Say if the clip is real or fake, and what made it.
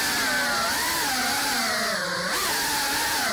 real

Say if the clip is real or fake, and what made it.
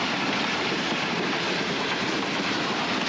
fake, vocoder, BigVGAN v2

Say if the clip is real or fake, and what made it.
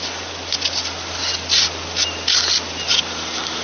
real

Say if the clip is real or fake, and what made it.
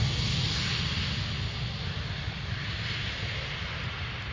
real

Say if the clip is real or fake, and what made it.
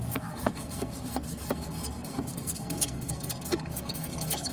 fake, codec, SNAC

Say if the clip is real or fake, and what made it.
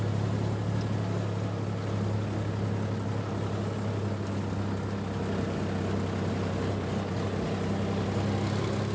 real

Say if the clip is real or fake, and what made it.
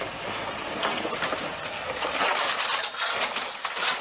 real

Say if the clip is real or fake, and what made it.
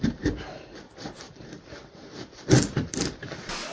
real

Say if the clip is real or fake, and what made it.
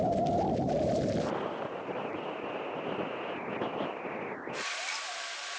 real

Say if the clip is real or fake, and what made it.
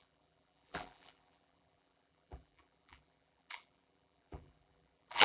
fake, vocoder, BigVGAN v2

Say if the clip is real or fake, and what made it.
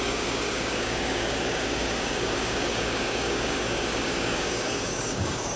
fake, codec, DAC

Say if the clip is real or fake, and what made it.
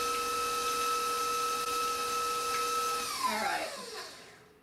real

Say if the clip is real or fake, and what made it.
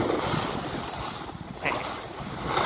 real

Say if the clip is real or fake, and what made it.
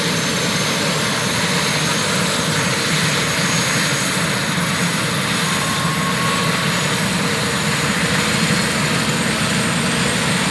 real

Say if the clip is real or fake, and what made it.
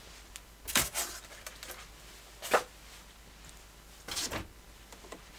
real